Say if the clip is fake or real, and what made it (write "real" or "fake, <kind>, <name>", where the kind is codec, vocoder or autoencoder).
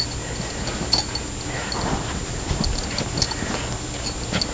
real